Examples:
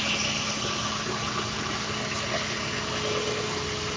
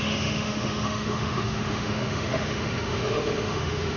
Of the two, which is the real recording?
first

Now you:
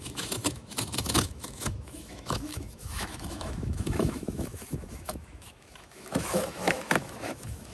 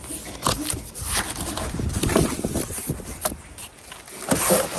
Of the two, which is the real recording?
second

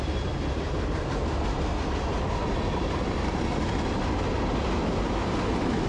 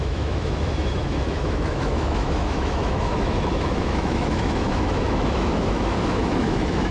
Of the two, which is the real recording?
first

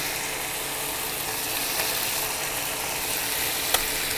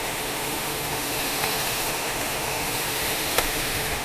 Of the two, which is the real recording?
first